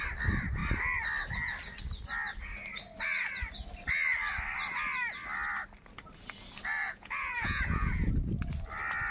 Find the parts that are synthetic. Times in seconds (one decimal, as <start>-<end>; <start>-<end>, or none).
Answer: 6.8-8.1